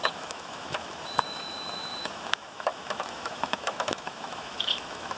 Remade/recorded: remade